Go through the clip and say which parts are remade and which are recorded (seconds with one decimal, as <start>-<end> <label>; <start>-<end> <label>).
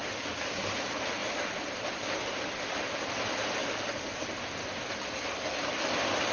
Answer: 0.0-0.5 remade; 0.5-3.6 recorded; 3.6-4.1 remade; 4.1-6.3 recorded